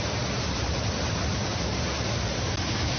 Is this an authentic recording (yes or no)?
yes